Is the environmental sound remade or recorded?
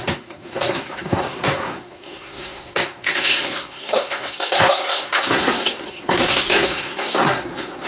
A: remade